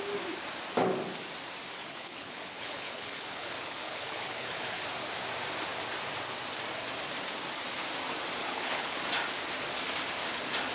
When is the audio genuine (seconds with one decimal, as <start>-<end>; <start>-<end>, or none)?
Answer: 0.0-1.8; 4.8-8.4; 9.0-10.7